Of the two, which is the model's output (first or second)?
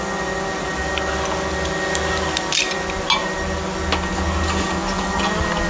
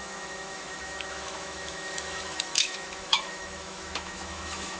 second